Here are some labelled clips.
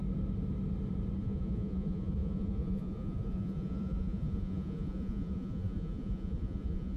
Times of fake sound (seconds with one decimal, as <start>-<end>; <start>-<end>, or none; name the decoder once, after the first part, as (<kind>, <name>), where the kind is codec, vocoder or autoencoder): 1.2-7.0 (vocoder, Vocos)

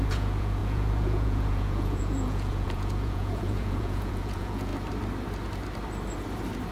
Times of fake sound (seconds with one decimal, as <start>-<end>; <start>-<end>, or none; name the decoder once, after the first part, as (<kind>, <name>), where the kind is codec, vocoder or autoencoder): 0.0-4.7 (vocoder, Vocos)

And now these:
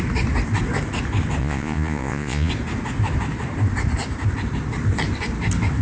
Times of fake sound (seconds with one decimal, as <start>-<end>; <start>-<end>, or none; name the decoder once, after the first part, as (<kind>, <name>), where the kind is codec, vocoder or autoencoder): 1.4-2.5 (vocoder, Vocos)

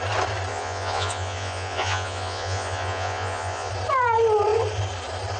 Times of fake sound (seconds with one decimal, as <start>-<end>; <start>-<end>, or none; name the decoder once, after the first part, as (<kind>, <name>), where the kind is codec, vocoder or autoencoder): 0.5-3.7 (vocoder, Vocos)